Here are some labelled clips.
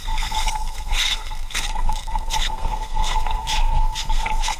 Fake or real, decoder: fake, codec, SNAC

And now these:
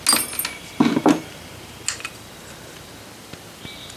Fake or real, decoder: real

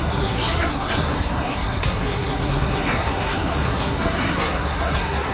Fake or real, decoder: fake, codec, SNAC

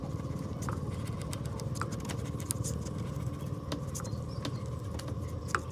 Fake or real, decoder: real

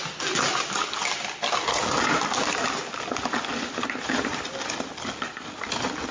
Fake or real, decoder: real